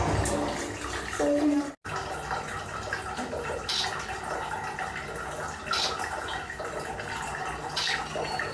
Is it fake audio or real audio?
real